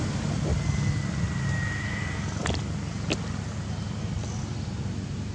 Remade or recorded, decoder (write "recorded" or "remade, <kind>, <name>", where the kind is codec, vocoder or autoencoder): recorded